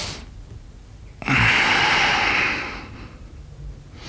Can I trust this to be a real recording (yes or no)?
yes